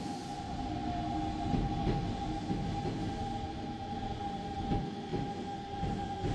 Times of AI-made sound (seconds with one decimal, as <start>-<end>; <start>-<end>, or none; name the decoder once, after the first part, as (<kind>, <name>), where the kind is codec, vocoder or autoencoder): none